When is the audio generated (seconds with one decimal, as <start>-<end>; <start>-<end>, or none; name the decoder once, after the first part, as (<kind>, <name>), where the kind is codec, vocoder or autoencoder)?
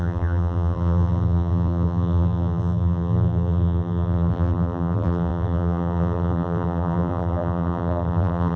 0.0-8.6 (vocoder, BigVGAN v2)